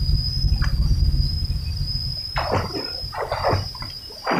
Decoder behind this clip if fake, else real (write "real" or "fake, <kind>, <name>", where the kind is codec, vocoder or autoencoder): real